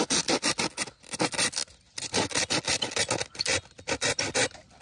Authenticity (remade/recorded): recorded